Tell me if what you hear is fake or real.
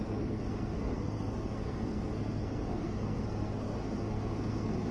fake